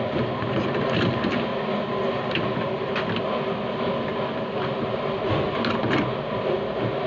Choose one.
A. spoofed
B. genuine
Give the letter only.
B